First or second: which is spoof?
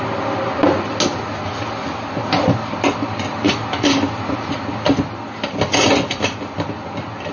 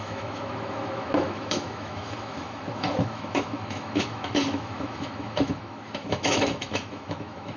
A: second